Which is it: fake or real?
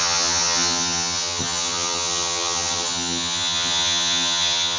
fake